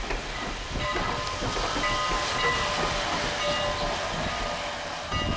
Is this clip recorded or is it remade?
recorded